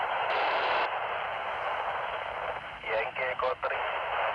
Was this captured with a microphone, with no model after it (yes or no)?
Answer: no